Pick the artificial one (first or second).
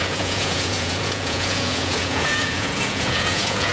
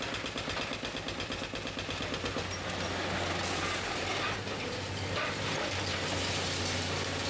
first